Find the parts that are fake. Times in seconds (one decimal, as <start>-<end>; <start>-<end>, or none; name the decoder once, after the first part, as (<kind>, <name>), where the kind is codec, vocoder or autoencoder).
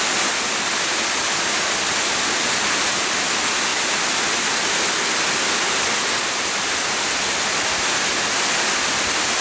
none